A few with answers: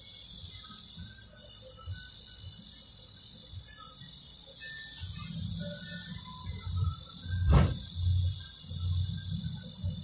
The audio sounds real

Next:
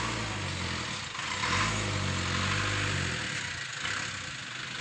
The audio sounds real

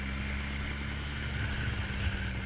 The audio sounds real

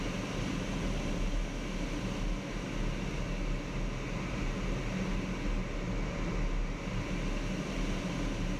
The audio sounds real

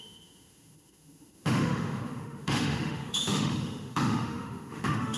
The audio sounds fake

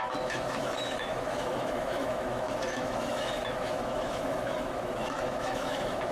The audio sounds fake